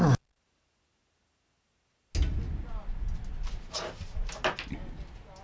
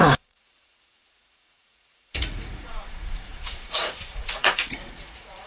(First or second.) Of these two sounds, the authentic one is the first